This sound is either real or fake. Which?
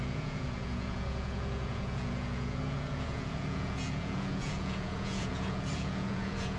fake